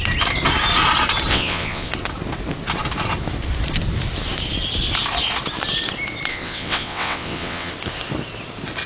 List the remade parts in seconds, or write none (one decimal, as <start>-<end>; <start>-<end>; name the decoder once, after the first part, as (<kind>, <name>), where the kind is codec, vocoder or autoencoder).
1.3-1.9 (vocoder, WaveNeXt); 6.3-7.7